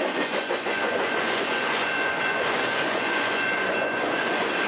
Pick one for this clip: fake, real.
fake